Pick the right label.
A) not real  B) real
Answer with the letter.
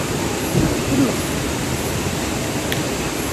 B